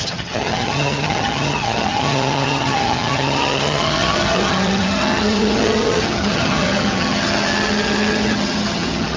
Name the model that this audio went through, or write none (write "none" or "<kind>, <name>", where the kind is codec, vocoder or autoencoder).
vocoder, HiFi-GAN